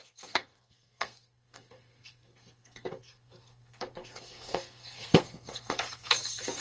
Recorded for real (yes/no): no